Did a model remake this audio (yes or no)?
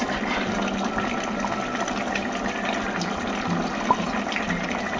no